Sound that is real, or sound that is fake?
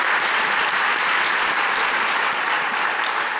fake